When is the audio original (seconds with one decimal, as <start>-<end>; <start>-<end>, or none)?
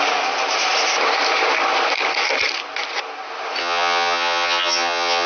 0.0-3.6